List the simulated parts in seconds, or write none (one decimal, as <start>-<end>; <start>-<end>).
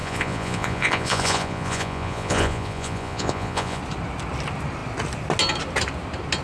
0.0-3.8